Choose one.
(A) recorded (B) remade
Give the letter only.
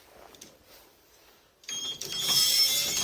A